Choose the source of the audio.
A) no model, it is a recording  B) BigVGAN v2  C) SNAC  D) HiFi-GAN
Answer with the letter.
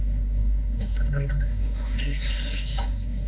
C